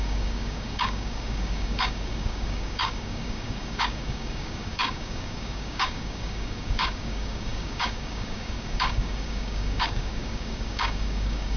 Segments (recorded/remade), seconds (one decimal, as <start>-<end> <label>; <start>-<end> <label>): 0.0-11.6 remade